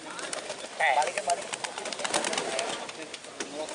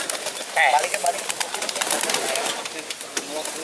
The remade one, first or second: first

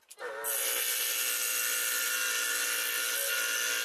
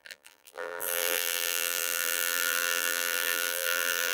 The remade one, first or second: second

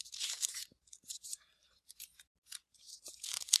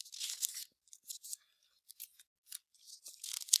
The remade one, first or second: first